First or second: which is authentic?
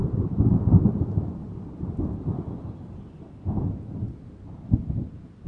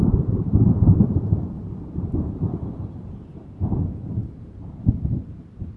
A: first